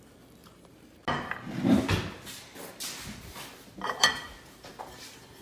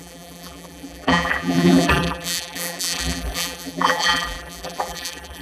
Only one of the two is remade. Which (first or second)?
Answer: second